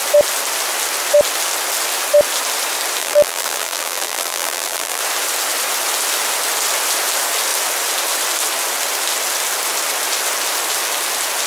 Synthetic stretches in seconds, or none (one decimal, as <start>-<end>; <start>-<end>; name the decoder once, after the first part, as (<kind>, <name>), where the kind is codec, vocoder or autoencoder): 3.0-5.0 (vocoder, BigVGAN v2)

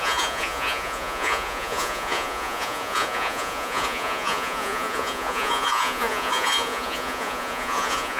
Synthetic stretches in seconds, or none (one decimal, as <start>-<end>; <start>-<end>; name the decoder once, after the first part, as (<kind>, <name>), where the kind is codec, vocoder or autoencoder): 0.0-8.2 (vocoder, Vocos)

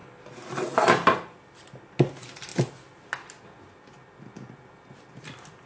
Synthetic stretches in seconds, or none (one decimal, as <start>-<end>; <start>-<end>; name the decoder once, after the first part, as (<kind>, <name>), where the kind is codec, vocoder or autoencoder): none

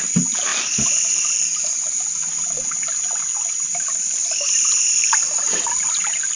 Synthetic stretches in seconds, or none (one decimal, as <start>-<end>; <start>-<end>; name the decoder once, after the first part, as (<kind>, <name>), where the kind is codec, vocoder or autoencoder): none

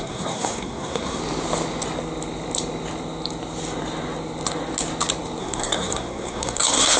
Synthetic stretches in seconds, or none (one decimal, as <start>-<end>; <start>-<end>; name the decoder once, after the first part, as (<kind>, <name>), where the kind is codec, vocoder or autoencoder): 0.0-1.2 (codec, SNAC); 5.4-7.0

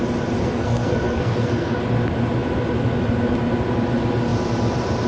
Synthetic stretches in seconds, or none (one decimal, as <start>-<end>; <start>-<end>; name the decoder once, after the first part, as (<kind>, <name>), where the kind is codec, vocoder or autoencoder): 0.4-1.8 (codec, SNAC)

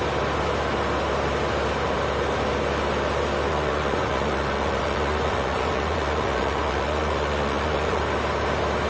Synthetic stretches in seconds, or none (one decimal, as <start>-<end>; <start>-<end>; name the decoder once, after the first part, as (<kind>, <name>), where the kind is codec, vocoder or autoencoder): 3.5-8.0 (vocoder, Vocos)

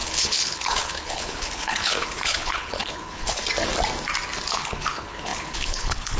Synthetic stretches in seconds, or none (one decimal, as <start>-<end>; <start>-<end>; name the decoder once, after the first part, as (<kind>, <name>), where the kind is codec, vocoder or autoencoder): 0.0-3.4 (codec, HILCodec); 4.5-6.2